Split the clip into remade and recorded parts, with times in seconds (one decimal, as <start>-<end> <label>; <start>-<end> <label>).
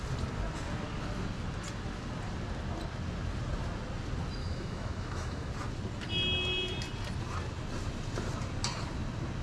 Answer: 0.0-4.4 recorded; 4.4-5.5 remade; 5.5-9.4 recorded